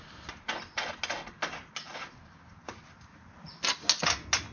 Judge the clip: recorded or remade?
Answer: recorded